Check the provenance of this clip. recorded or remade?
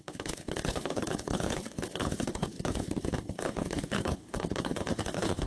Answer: remade